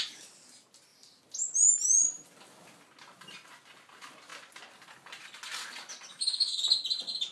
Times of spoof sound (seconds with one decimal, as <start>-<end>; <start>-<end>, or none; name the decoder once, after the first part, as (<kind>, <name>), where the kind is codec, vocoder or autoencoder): 6.1-6.6 (autoencoder, DAC-VAE)